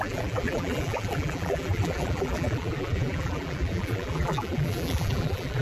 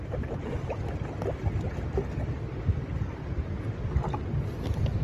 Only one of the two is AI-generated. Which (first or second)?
first